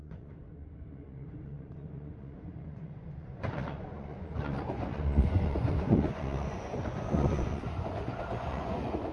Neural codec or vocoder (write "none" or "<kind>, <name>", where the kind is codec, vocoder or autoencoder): vocoder, Vocos